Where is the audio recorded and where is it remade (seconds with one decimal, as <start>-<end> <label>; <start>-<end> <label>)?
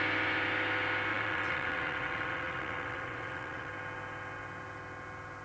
0.0-1.1 recorded; 1.1-3.7 remade; 3.7-5.4 recorded